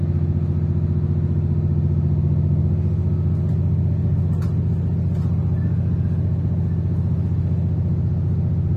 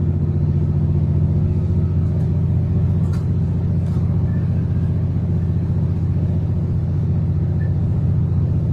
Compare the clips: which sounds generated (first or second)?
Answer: second